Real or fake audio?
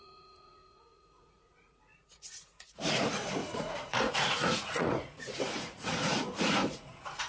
fake